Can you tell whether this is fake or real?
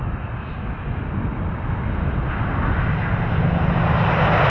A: real